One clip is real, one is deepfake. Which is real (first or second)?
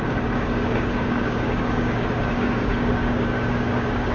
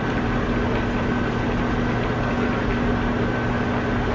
second